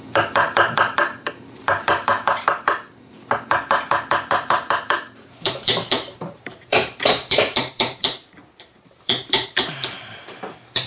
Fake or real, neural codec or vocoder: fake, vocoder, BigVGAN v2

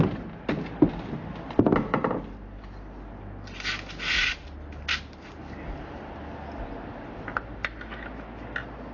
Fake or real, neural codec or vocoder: real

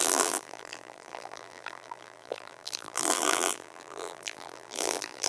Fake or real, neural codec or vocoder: fake, vocoder, BigVGAN v2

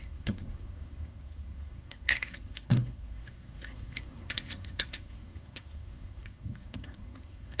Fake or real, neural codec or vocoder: fake, codec, SNAC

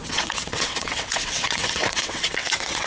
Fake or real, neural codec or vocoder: fake, vocoder, WaveNeXt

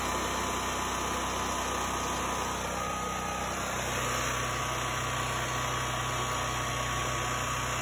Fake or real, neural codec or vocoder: real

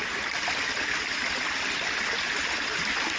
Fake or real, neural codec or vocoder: real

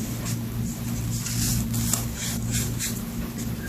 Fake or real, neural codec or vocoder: fake, vocoder, BigVGAN v2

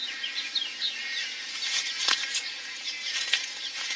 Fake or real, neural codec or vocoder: fake, vocoder, Vocos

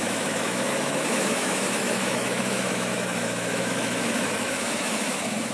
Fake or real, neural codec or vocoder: fake, autoencoder, DAC-VAE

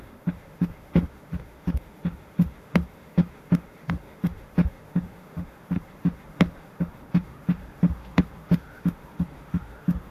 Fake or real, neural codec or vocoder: fake, autoencoder, DAC-VAE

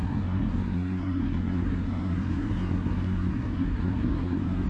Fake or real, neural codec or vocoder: fake, codec, SNAC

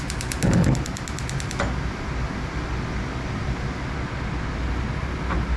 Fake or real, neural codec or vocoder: real